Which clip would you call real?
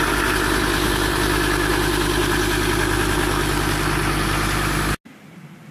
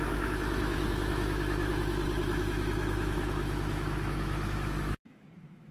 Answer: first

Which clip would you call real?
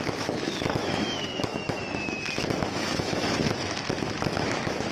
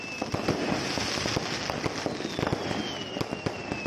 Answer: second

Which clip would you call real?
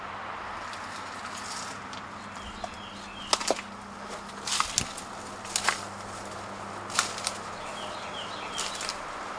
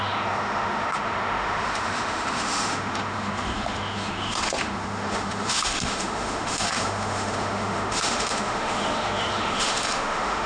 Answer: first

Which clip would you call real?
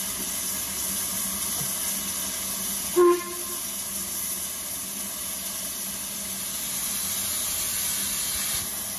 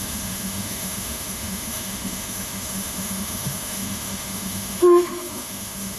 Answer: first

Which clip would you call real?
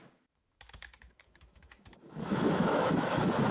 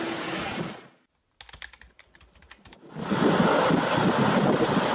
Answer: second